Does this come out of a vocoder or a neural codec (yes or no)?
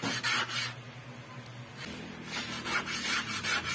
no